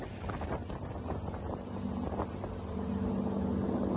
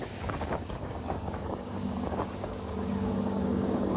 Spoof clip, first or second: second